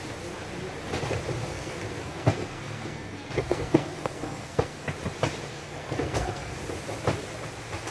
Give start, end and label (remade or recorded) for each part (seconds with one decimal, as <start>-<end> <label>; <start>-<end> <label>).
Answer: 0.0-1.4 recorded; 1.4-4.9 remade; 4.9-5.5 recorded; 5.5-6.6 remade; 6.6-7.9 recorded